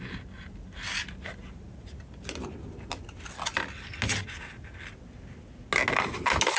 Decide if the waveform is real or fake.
real